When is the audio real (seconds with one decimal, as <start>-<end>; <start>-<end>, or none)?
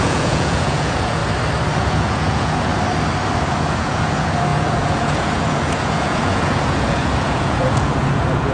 1.2-1.8; 2.7-3.7